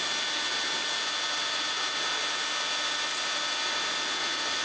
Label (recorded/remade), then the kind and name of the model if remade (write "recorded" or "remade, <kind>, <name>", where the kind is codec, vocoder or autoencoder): recorded